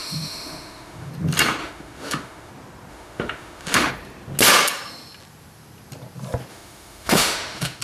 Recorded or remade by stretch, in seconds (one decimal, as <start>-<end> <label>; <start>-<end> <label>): 0.0-1.1 remade; 1.1-1.6 recorded; 1.6-2.5 remade; 2.5-2.9 recorded; 2.9-3.9 remade; 3.9-6.5 recorded; 6.5-7.8 remade